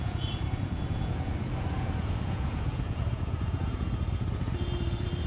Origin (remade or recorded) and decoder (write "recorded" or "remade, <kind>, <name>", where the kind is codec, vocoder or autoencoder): remade, vocoder, Vocos